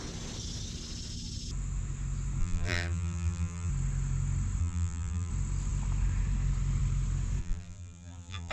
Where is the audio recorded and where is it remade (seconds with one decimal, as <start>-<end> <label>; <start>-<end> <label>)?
0.0-2.4 recorded; 2.4-3.7 remade; 3.7-4.6 recorded; 4.6-5.3 remade; 5.3-7.4 recorded; 7.4-8.5 remade